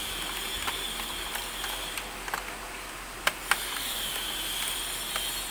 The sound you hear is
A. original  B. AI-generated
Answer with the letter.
A